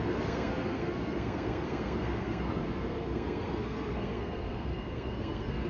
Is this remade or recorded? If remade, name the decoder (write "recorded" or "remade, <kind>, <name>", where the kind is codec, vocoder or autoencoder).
remade, codec, SNAC